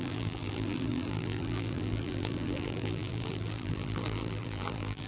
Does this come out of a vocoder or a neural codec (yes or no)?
yes